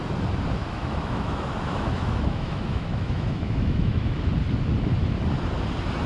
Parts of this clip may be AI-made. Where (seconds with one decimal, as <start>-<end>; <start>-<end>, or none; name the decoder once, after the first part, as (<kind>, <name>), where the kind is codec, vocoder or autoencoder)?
0.6-4.3 (autoencoder, DAC-VAE)